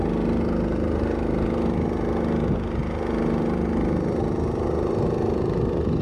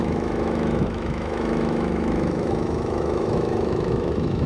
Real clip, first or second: first